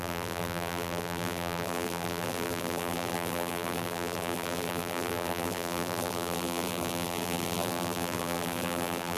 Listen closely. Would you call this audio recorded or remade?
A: remade